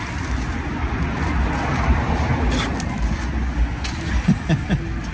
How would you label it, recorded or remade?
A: recorded